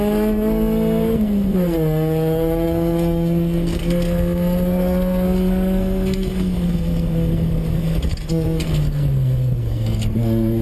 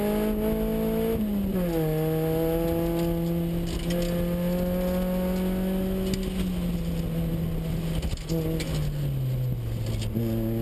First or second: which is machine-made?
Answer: first